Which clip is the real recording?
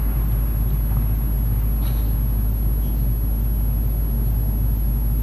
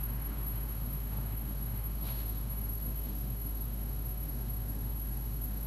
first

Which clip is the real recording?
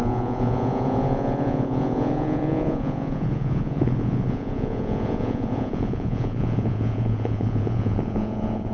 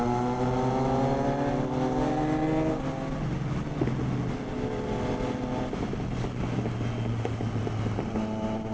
second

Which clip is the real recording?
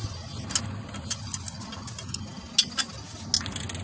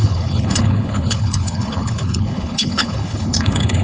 first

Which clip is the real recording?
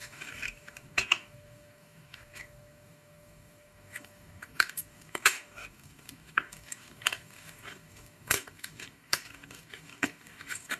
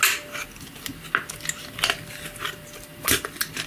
second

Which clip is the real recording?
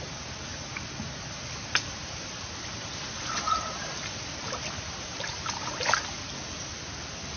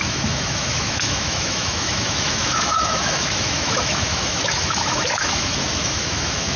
first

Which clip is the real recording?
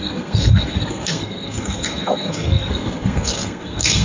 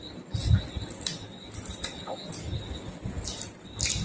second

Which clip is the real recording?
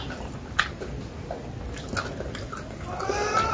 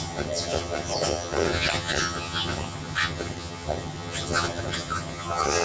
first